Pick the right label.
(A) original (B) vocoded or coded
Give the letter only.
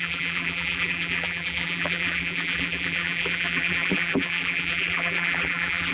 B